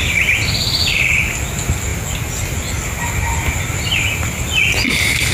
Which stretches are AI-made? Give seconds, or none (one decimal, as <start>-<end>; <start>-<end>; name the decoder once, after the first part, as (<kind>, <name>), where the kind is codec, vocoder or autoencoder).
none

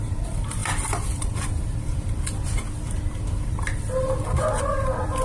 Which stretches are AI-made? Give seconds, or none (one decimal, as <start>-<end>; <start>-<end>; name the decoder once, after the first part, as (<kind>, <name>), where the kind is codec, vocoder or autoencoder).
0.0-5.2 (vocoder, BigVGAN v2)

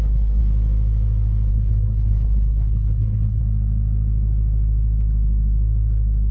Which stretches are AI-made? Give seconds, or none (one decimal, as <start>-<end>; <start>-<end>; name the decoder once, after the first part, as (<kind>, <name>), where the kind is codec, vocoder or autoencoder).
0.0-0.4 (codec, HILCodec); 1.5-3.4

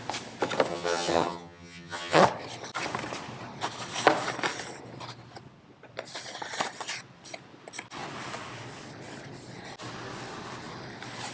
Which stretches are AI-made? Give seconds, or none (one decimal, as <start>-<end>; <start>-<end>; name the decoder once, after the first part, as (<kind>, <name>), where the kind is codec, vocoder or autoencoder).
0.7-2.2 (vocoder, HiFi-GAN)

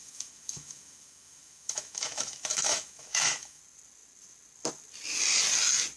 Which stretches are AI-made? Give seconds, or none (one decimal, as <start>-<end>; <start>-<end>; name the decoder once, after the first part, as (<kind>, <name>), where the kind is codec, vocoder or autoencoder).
0.0-3.6 (autoencoder, DAC-VAE)